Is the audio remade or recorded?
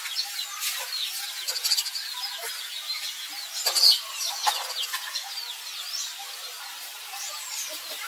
recorded